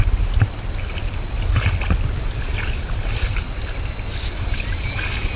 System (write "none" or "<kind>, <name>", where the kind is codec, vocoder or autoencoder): none